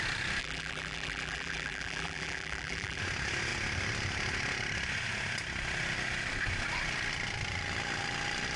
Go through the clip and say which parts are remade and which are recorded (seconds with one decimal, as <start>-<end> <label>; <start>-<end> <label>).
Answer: 0.0-0.4 recorded; 0.4-3.0 remade; 3.0-8.6 recorded